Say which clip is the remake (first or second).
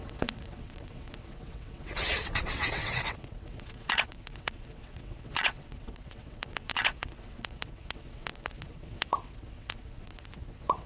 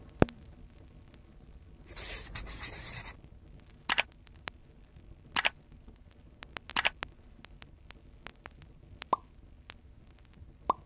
first